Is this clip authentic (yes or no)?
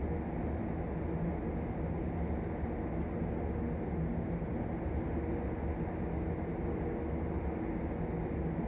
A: yes